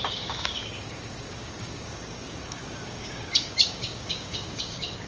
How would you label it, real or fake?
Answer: fake